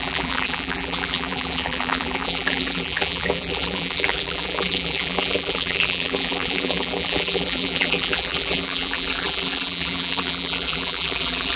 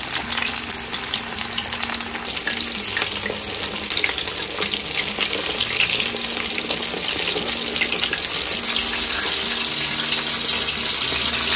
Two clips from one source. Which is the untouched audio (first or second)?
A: second